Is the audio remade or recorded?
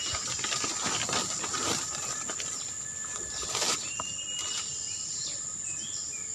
recorded